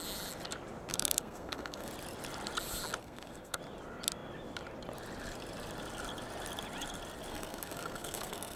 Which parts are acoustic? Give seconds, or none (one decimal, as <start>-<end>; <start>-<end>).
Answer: 0.0-0.9; 1.9-3.0; 3.6-7.3